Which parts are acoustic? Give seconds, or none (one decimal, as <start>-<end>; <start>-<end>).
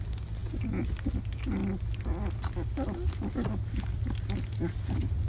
0.0-5.3